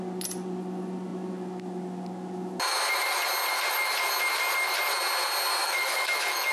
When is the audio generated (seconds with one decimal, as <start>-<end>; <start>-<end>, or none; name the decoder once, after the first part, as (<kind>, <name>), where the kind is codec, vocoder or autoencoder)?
5.6-6.5 (autoencoder, DAC-VAE)